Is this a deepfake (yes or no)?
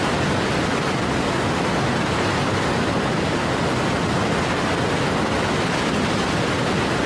no